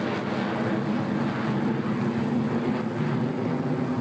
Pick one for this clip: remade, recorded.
recorded